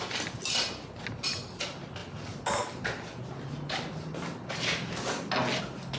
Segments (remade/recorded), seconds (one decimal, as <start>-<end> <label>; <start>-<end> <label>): 0.0-6.0 recorded